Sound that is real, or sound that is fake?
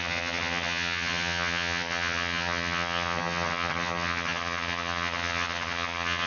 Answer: fake